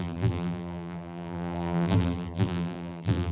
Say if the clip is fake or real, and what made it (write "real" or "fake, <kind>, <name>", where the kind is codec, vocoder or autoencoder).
fake, vocoder, BigVGAN v2